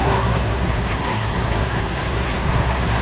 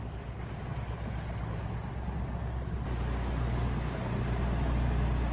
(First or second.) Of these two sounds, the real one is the second